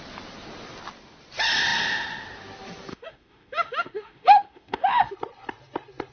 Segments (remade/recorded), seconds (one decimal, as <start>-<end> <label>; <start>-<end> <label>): 0.0-2.9 recorded; 2.9-5.1 remade; 5.1-6.1 recorded